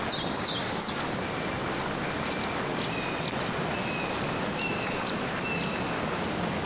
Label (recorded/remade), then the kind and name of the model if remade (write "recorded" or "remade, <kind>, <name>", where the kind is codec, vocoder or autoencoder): recorded